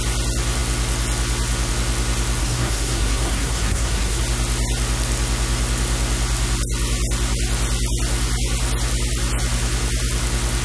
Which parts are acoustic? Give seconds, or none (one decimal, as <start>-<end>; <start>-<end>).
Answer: 0.0-2.4; 4.2-10.6